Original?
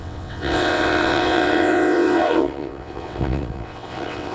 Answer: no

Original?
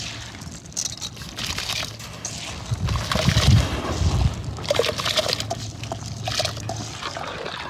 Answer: yes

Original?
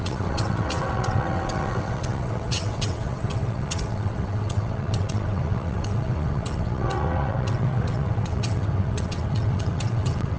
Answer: no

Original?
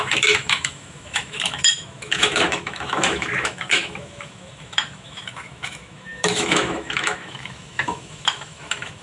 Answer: no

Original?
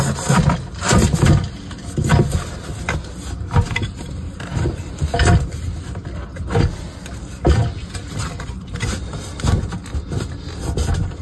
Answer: yes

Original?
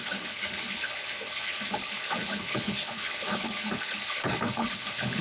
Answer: no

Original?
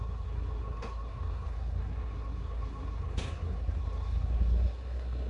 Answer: no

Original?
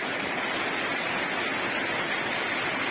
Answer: yes